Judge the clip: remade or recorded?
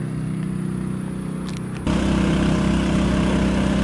recorded